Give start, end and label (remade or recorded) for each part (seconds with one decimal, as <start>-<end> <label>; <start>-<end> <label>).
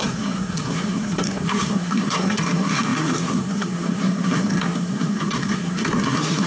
0.0-6.5 remade